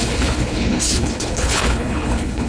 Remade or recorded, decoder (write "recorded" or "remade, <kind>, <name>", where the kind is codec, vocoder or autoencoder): remade, codec, HILCodec